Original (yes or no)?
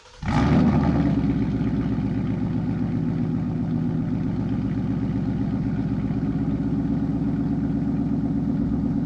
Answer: yes